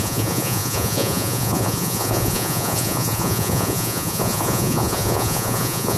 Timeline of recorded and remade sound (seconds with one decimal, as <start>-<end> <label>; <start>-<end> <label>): 0.0-6.0 remade